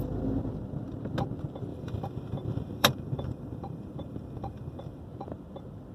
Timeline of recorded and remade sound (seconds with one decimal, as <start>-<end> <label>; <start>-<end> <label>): 0.0-1.7 recorded; 1.7-5.0 remade; 5.0-5.9 recorded